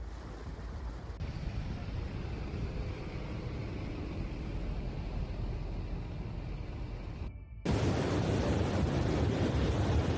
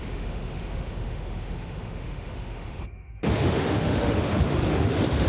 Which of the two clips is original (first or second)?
first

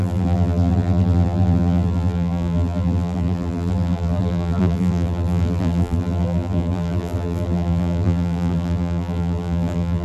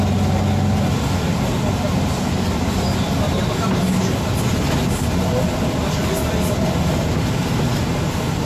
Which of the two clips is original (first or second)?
second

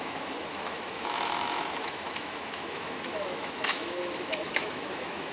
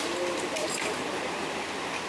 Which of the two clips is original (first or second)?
second